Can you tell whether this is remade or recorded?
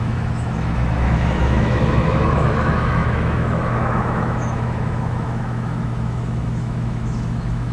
remade